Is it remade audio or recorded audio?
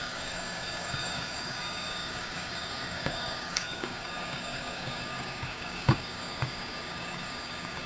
remade